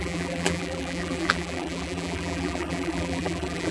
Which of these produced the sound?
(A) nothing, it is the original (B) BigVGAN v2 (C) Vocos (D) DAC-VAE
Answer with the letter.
B